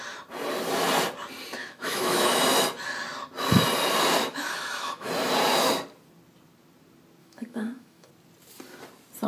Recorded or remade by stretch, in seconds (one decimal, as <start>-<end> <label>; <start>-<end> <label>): 0.0-1.6 recorded; 1.6-2.4 remade; 2.4-4.2 recorded; 4.2-5.1 remade; 5.1-7.2 recorded; 7.2-8.1 remade; 8.1-9.3 recorded